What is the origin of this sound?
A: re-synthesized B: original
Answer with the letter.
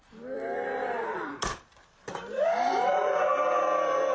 A